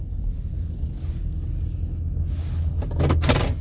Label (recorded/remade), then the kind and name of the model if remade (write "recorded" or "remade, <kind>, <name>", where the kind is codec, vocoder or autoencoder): recorded